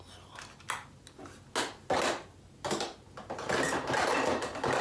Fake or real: real